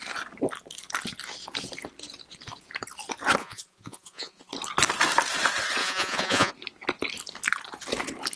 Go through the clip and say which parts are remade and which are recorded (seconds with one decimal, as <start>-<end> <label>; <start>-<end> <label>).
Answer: 0.0-3.4 recorded; 3.4-4.5 remade; 4.5-5.8 recorded; 5.8-6.5 remade; 6.5-8.4 recorded